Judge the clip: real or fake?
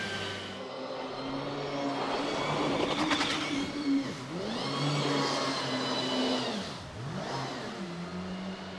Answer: real